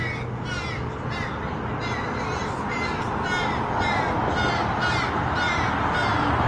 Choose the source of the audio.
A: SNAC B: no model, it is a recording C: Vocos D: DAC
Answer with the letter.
B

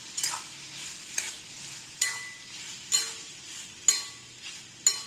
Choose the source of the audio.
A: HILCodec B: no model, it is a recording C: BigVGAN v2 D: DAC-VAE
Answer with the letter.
B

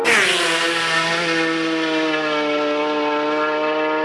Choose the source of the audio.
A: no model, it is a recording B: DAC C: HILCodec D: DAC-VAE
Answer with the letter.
A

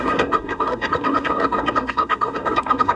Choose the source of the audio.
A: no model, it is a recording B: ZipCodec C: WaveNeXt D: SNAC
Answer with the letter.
D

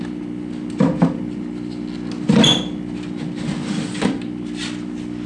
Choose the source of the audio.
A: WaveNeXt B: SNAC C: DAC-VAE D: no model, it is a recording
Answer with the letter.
D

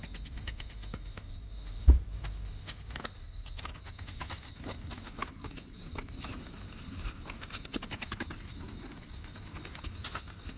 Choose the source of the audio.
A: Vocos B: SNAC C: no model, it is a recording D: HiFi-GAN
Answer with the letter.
C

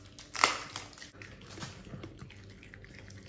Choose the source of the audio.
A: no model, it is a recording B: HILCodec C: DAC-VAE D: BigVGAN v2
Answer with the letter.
A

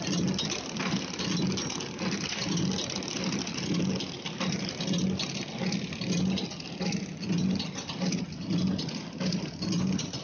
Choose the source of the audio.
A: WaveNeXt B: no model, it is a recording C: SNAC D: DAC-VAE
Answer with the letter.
B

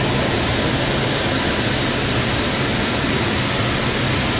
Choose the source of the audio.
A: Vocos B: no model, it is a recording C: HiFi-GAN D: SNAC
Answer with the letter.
B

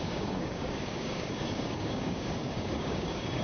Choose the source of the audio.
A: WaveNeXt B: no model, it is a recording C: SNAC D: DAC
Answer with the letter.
D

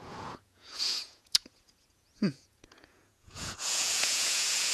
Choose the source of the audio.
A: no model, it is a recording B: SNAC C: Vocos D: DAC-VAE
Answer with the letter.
C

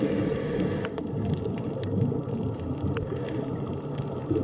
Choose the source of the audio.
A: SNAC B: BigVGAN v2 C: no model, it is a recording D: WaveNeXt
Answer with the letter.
C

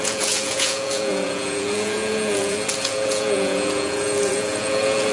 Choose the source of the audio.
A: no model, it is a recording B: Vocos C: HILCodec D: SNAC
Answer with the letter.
B